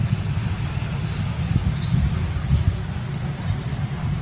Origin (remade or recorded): recorded